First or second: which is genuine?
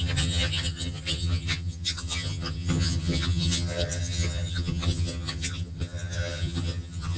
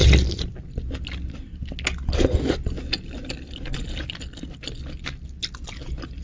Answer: second